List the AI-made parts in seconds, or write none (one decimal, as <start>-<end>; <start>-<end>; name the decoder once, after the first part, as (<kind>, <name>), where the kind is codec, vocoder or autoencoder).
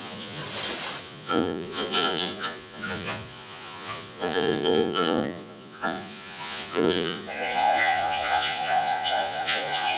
0.0-0.4 (vocoder, Vocos); 1.0-10.0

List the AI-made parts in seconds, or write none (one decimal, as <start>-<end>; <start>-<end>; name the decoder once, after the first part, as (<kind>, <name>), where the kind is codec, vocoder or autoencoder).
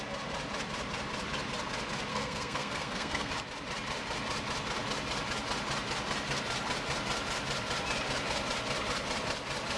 2.1-3.3 (codec, SNAC)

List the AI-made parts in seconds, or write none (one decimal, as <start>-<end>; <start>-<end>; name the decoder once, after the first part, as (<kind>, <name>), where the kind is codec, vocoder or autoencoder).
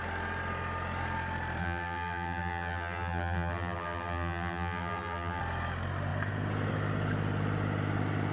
1.6-5.4 (vocoder, BigVGAN v2)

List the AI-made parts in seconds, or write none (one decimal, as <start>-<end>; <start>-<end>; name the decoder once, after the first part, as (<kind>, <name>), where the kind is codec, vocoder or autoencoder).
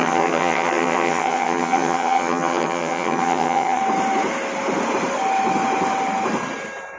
0.0-3.8 (vocoder, HiFi-GAN)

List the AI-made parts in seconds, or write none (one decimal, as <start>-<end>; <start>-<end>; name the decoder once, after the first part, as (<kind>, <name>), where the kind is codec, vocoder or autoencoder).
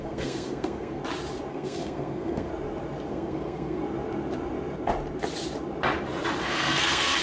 0.0-1.0 (codec, SNAC); 1.5-2.5; 3.1-3.8; 6.4-7.2